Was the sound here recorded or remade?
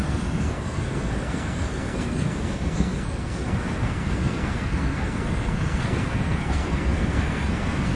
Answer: remade